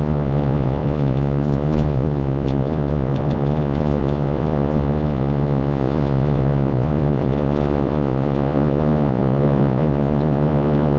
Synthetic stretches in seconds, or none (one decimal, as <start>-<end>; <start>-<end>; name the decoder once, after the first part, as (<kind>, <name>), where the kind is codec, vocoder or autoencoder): 0.0-11.0 (vocoder, Vocos)